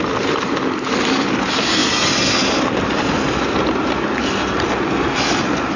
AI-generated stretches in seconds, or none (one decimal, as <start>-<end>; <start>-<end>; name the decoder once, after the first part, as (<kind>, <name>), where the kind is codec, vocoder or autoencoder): none